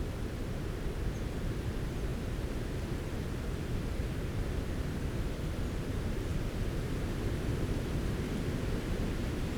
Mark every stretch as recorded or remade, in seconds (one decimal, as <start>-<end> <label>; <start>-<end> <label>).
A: 0.0-2.1 remade; 2.1-3.1 recorded; 3.1-9.6 remade